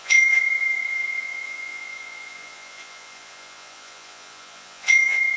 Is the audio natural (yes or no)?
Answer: no